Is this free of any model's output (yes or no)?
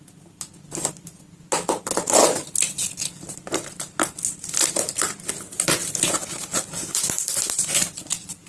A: yes